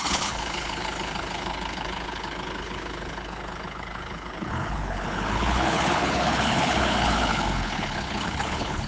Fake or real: fake